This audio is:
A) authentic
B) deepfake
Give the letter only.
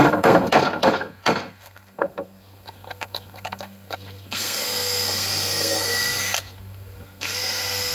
B